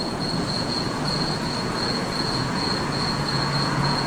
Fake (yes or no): yes